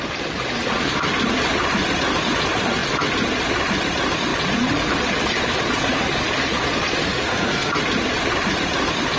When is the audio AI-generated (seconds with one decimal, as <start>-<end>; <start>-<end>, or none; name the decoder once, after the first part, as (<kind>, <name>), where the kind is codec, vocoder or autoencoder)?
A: 7.1-7.7 (codec, SNAC)